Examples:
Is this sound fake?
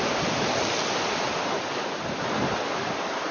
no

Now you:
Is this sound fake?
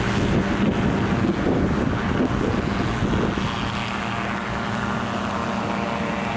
no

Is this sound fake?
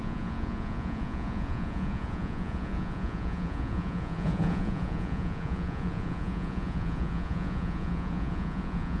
yes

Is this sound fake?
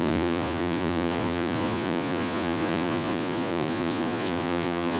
yes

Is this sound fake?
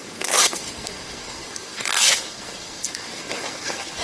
yes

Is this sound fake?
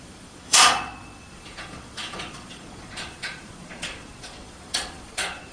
yes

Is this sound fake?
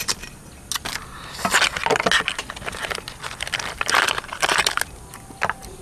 no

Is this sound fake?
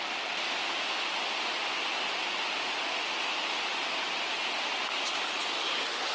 no